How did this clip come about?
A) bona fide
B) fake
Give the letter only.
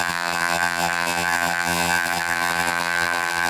B